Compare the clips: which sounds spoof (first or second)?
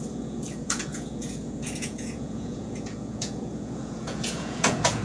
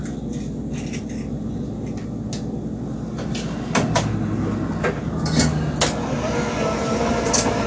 first